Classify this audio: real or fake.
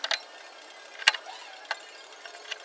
real